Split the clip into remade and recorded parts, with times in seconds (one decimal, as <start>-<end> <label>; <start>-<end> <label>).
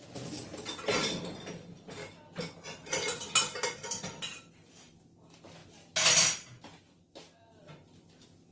0.0-8.5 recorded